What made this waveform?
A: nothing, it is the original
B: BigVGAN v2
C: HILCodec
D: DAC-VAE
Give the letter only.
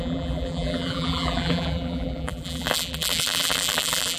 B